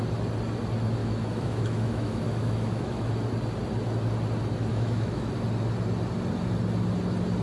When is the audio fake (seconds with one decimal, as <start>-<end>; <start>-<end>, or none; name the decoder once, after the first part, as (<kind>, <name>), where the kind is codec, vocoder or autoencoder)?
1.0-3.1 (autoencoder, DAC-VAE); 4.7-5.3